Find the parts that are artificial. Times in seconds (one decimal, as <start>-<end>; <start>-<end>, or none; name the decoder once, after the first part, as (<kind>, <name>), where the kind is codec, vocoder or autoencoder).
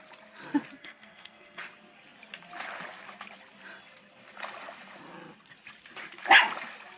0.8-1.6 (codec, SNAC)